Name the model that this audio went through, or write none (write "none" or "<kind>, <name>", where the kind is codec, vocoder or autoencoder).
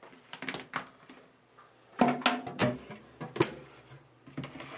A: none